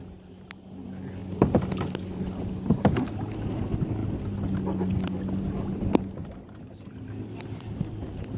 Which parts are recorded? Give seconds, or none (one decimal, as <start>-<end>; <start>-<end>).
0.0-8.4